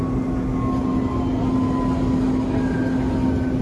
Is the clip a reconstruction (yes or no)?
no